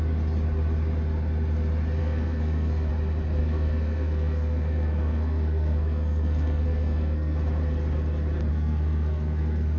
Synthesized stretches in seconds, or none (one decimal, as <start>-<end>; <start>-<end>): 2.0-2.9; 3.4-7.4; 8.5-9.8